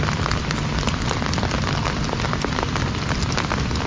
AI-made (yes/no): no